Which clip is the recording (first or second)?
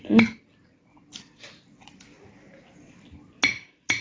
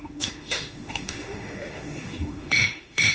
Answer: first